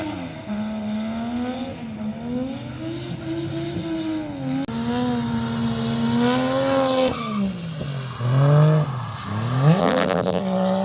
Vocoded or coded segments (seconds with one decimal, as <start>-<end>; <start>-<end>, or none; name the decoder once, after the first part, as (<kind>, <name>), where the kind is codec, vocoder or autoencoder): 9.8-10.4 (vocoder, BigVGAN v2)